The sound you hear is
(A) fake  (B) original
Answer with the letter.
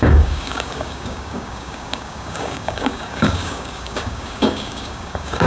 A